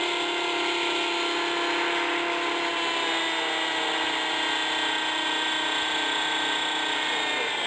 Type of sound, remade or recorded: recorded